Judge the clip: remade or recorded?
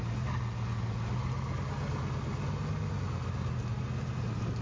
recorded